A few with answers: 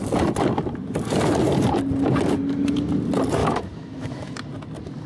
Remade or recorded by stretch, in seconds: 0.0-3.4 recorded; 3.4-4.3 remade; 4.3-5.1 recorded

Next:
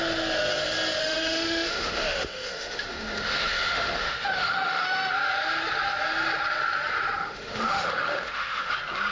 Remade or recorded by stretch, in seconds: 0.0-1.0 recorded; 1.0-5.1 remade; 5.1-7.2 recorded; 7.2-8.7 remade; 8.7-9.1 recorded

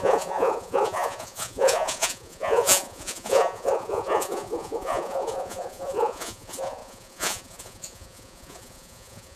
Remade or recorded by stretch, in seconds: 0.0-9.4 remade

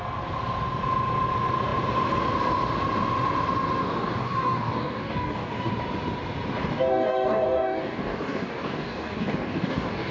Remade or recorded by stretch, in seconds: 0.0-3.8 recorded; 3.8-5.7 remade; 5.7-6.6 recorded; 6.6-10.1 remade

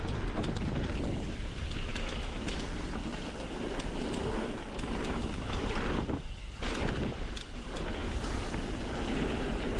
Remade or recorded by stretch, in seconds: 0.0-1.9 recorded; 1.9-2.6 remade; 2.6-9.8 recorded

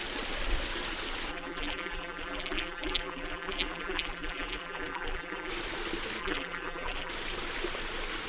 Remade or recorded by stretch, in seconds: 0.0-1.3 recorded; 1.3-5.5 remade; 5.5-6.2 recorded; 6.2-7.1 remade; 7.1-8.3 recorded